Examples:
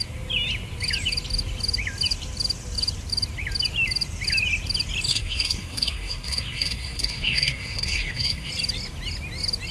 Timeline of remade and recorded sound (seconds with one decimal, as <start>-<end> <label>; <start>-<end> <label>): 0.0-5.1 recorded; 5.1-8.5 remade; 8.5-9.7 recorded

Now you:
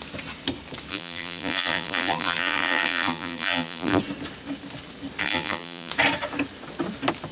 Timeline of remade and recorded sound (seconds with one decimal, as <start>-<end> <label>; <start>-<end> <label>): 0.0-0.9 recorded; 0.9-4.0 remade; 4.0-5.2 recorded; 5.2-5.9 remade; 5.9-7.3 recorded

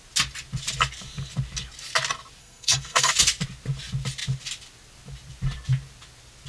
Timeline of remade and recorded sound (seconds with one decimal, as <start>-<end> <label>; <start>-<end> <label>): 0.0-2.4 recorded; 2.4-3.1 remade; 3.1-6.5 recorded

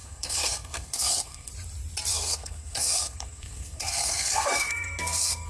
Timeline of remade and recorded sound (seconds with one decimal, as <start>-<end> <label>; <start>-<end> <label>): 0.0-1.5 remade; 1.5-2.1 recorded; 2.1-5.5 remade

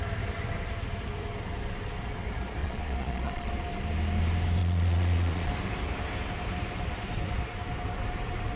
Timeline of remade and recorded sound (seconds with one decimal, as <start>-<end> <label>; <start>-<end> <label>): 0.0-2.6 recorded; 2.6-3.5 remade; 3.5-4.6 recorded; 4.6-5.5 remade; 5.5-8.6 recorded

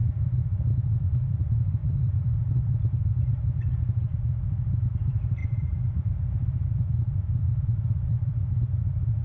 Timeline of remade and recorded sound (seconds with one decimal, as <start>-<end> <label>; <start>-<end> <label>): 0.0-1.4 recorded; 1.4-4.1 remade; 4.1-4.8 recorded; 4.8-5.4 remade; 5.4-6.4 recorded; 6.4-9.2 remade